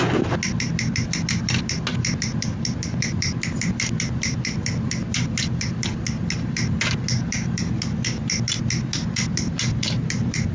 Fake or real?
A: real